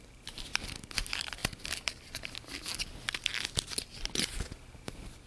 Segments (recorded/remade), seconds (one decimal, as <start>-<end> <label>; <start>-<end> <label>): 0.0-5.3 recorded